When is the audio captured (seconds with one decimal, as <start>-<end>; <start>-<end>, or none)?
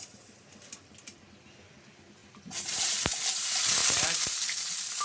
0.0-2.2; 3.1-3.8